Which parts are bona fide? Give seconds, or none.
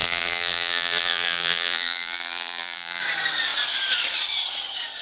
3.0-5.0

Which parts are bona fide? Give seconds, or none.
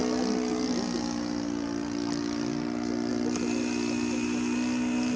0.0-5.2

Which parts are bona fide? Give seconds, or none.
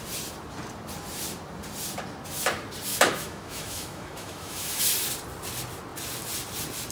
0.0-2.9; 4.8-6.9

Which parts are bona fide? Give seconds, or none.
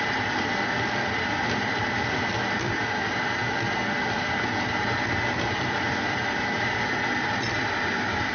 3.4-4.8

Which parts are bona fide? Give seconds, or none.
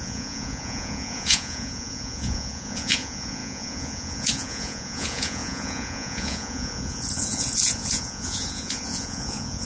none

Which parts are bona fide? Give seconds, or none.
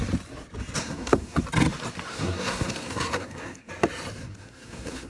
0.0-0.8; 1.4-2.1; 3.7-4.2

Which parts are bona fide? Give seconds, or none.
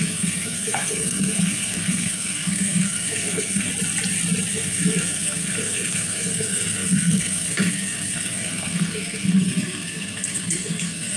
3.7-4.5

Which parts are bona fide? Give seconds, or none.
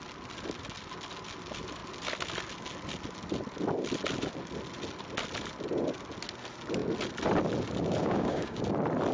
0.0-8.0; 8.6-9.1